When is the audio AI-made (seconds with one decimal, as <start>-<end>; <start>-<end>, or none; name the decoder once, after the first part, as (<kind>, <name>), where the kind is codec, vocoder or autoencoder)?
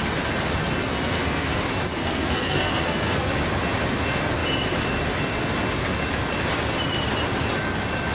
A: 0.8-1.6 (codec, SNAC); 2.0-3.3